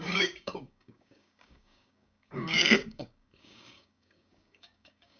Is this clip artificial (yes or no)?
yes